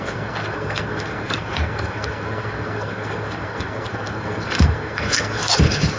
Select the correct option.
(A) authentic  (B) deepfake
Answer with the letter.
B